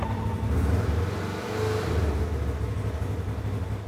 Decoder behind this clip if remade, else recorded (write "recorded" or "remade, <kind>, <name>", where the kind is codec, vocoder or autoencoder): recorded